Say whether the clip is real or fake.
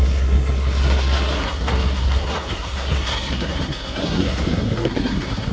fake